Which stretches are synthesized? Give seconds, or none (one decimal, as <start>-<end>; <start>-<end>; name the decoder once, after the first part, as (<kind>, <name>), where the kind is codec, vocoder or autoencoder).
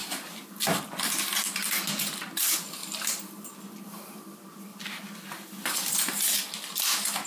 0.0-0.8 (vocoder, BigVGAN v2); 2.8-4.1; 4.7-6.1